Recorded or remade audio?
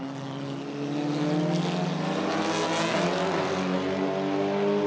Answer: recorded